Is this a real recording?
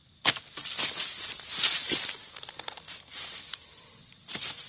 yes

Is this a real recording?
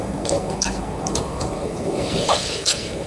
no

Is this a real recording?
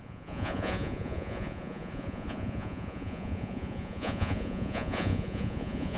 no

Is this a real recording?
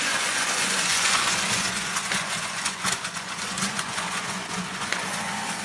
no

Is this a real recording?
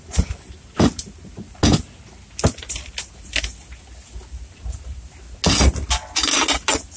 yes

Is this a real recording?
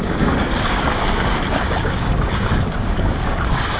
no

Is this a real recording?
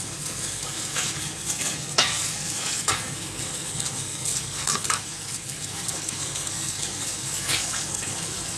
no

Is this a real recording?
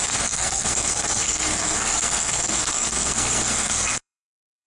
no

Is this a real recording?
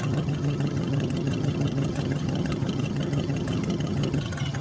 no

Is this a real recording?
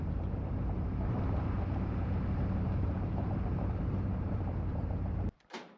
no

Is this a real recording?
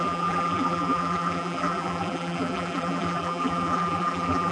no